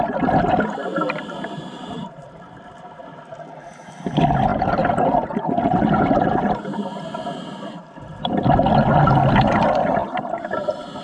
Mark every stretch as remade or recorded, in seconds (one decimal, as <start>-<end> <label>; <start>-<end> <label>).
0.0-0.9 recorded; 0.9-3.1 remade; 3.1-4.5 recorded; 4.5-7.7 remade; 7.7-10.0 recorded; 10.0-11.0 remade